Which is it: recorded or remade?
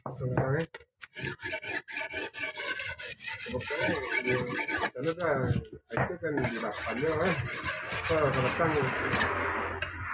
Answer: recorded